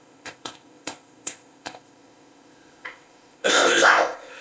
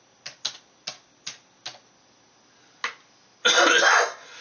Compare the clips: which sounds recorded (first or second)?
second